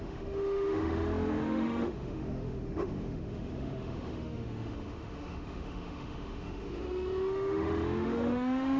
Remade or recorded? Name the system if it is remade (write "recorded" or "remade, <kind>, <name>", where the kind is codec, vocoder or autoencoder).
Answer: remade, autoencoder, DAC-VAE